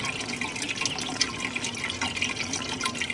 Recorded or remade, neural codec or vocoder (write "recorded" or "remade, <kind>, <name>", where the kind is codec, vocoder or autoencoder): recorded